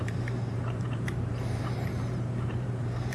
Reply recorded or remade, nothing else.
remade